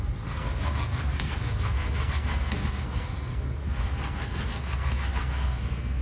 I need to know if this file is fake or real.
fake